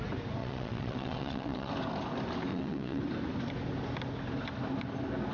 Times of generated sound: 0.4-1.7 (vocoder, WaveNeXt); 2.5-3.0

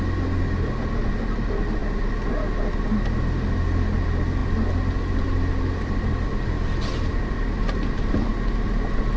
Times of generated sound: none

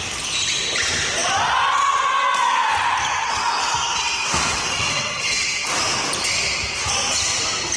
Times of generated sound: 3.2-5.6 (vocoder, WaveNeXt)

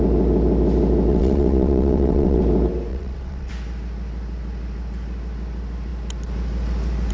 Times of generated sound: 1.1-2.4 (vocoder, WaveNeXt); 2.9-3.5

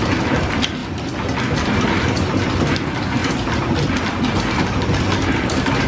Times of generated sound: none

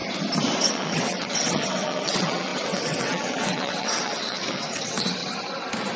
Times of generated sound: 0.6-5.2 (vocoder, WaveNeXt)

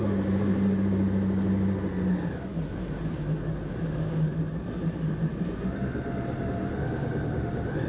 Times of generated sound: none